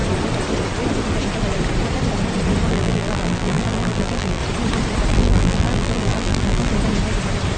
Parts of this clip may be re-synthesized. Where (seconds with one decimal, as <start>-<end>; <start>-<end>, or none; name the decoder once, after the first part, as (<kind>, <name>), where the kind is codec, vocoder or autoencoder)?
2.7-4.4 (vocoder, BigVGAN v2); 5.1-6.7